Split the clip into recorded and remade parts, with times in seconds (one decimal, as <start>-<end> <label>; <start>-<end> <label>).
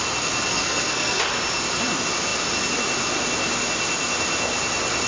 0.0-0.5 recorded; 0.5-1.2 remade; 1.2-5.1 recorded